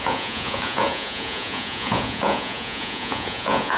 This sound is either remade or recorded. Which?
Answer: remade